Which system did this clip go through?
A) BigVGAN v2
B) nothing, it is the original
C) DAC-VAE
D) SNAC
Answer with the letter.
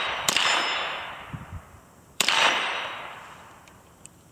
A